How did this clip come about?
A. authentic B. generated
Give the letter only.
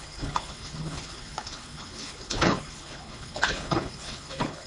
B